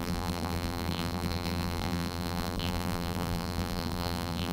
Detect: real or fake fake